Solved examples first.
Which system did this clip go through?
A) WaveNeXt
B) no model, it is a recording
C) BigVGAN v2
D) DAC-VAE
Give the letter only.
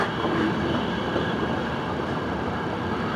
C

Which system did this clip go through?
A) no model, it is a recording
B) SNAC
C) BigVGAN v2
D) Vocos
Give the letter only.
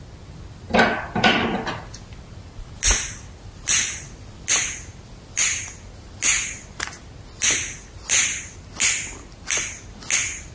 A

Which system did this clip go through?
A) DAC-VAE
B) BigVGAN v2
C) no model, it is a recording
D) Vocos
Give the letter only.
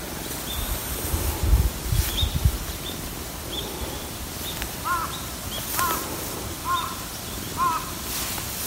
C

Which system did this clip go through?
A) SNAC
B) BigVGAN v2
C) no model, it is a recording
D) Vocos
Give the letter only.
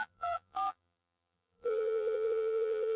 B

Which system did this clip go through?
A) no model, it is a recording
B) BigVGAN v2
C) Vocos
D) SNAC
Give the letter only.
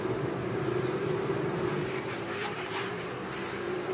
B